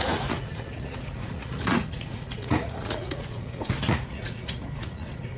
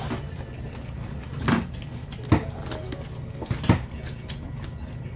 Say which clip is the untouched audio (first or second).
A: second